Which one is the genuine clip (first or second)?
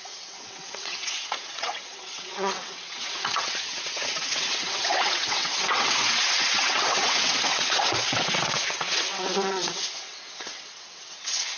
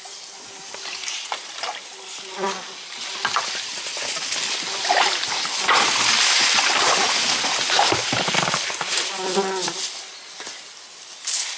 second